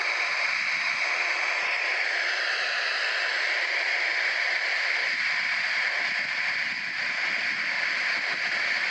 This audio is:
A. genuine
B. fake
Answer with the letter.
A